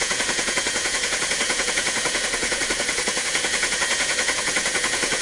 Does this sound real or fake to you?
fake